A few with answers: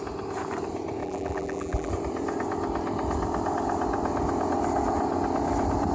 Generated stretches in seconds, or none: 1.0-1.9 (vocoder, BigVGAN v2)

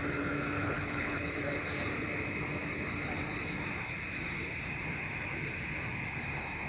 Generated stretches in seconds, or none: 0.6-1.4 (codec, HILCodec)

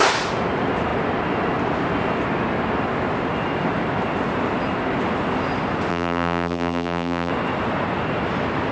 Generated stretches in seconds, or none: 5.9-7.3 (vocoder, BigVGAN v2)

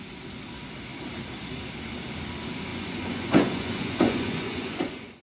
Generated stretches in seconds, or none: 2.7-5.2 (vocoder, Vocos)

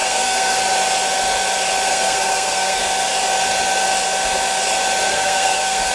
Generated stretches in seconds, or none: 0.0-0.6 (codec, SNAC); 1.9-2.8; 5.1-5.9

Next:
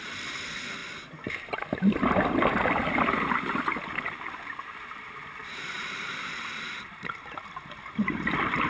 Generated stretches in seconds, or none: 5.4-7.1 (vocoder, BigVGAN v2)

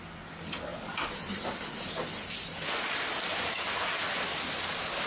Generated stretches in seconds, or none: none